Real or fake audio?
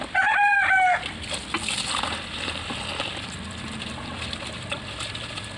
real